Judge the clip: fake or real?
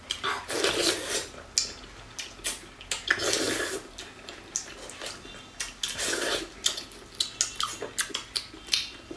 real